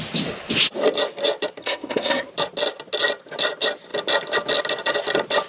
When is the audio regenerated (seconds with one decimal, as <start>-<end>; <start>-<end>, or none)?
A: 1.6-2.3

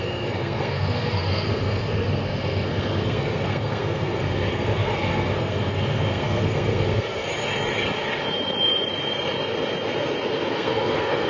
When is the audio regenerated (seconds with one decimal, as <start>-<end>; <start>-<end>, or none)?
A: 0.0-7.3; 10.5-11.3

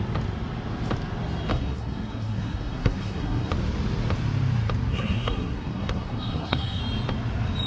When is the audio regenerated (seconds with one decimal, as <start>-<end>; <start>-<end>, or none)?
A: 1.5-3.5; 4.9-6.8

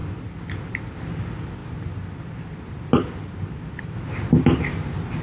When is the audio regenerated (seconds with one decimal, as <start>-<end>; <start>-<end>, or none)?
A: none

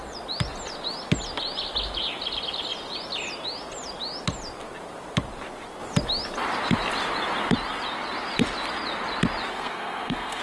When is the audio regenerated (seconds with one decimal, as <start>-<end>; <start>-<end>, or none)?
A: 9.5-10.4

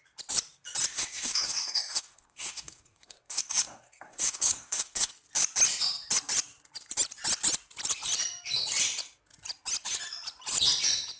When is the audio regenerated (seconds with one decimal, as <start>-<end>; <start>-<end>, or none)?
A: 0.9-5.1

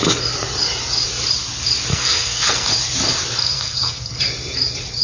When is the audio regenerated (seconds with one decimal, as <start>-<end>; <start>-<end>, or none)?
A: 1.9-2.7; 3.4-4.2

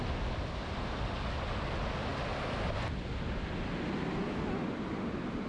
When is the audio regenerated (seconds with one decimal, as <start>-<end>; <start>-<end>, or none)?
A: none